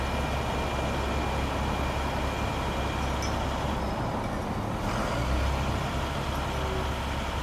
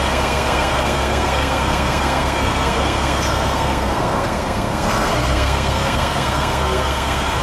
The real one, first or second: first